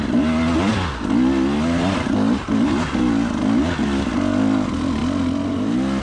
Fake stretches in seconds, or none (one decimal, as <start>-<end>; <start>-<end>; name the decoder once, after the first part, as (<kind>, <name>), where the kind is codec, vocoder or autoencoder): none